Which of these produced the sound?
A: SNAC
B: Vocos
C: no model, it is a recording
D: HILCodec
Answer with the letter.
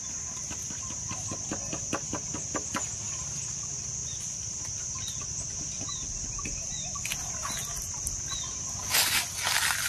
C